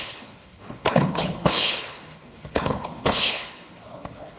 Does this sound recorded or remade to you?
remade